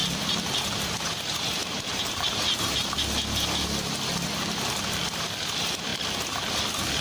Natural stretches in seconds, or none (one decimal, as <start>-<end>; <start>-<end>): 1.0-1.6; 3.0-7.0